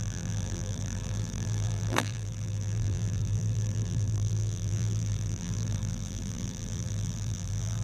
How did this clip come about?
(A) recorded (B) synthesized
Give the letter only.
B